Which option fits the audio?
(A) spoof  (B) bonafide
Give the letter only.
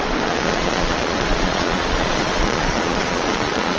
A